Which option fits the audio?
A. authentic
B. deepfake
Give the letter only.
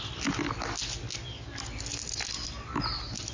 A